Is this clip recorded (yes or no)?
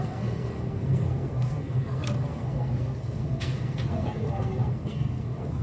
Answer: no